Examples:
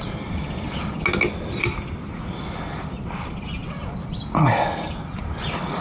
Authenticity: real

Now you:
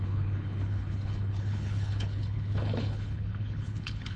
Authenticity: fake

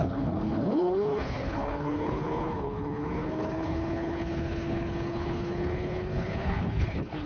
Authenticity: fake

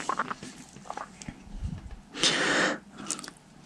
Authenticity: real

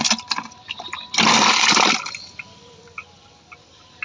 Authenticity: real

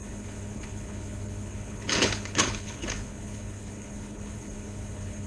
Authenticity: fake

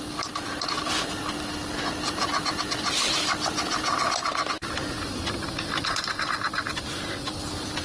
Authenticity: real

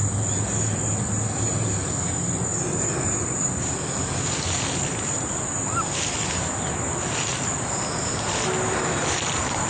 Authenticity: real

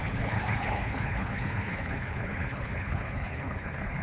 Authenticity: fake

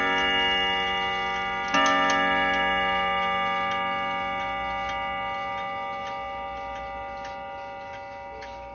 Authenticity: real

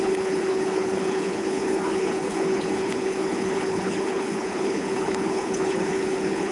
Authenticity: fake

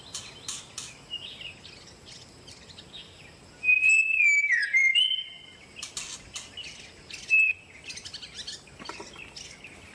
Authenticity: real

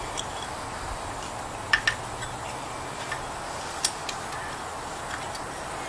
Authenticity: real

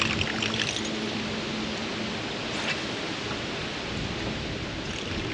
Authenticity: real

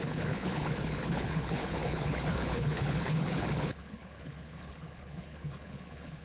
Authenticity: fake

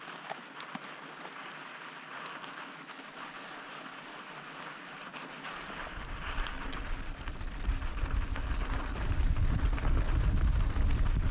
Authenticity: real